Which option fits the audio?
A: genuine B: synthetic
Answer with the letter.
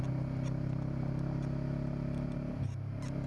A